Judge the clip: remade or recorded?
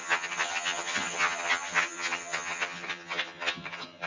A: remade